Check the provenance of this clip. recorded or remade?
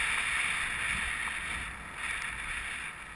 recorded